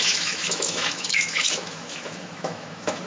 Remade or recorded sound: remade